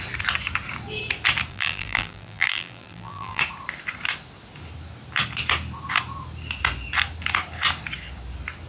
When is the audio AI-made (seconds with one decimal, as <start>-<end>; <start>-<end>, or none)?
1.5-3.4